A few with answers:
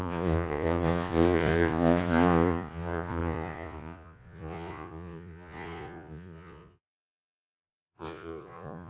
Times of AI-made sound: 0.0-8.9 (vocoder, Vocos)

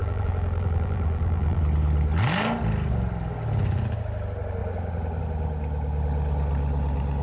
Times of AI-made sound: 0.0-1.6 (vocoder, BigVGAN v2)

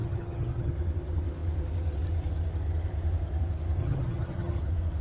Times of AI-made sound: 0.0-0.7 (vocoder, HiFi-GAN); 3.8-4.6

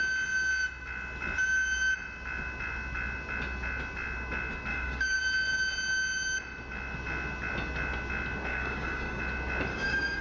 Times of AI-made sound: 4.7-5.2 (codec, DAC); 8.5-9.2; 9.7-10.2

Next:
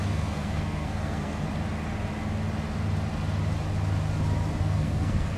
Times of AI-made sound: 0.0-1.5 (codec, SNAC); 4.6-5.4

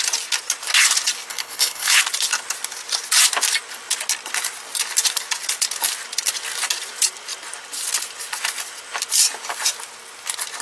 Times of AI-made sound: 1.3-2.0 (codec, HILCodec)

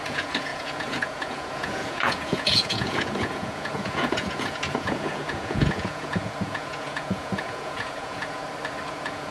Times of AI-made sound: 0.0-8.4 (vocoder, Vocos); 8.9-9.3